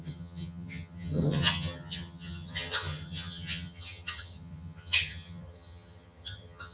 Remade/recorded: remade